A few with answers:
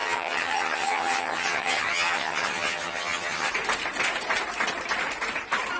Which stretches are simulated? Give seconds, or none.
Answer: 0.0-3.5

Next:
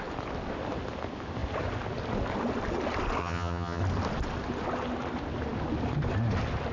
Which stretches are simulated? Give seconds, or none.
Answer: 3.2-3.8

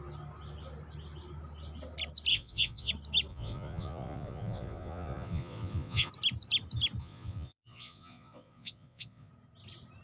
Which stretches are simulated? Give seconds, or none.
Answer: 2.3-2.9; 3.3-6.1; 7.0-9.3

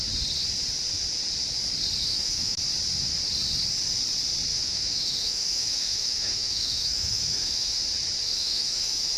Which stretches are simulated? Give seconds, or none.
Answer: 2.1-2.6; 4.5-7.8; 8.3-9.2

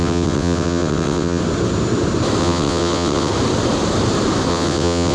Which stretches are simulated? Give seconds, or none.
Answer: 0.0-1.4; 2.4-3.3; 4.5-5.1

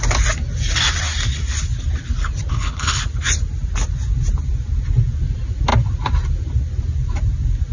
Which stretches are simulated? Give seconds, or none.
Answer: 2.5-3.0

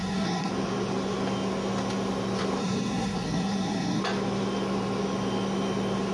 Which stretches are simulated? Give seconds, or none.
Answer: 0.0-0.5; 2.6-4.0